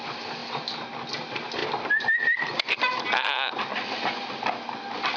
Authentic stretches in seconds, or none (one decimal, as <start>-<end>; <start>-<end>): 0.0-5.2